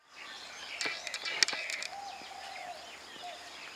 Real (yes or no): yes